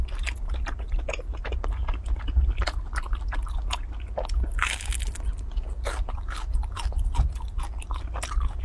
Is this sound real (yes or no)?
yes